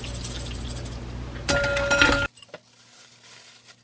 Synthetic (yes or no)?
no